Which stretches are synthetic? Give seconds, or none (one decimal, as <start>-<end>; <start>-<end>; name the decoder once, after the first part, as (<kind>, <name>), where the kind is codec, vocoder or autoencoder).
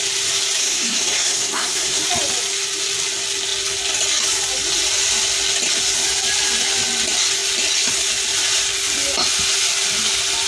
0.6-2.0 (codec, SNAC)